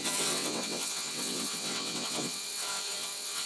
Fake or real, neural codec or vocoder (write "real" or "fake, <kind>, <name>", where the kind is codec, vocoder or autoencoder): fake, vocoder, WaveNeXt